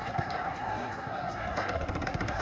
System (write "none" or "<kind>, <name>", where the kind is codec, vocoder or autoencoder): codec, SNAC